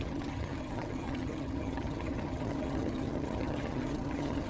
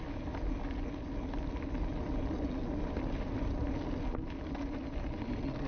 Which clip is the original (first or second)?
second